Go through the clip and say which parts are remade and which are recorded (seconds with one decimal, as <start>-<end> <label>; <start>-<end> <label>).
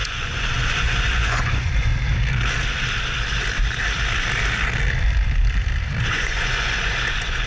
0.0-1.9 remade; 1.9-6.0 recorded; 6.0-7.5 remade